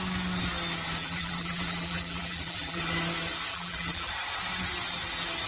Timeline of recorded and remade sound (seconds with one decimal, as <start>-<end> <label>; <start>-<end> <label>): 0.0-1.0 recorded; 1.0-2.8 remade; 2.8-3.5 recorded; 3.5-4.1 remade; 4.1-5.5 recorded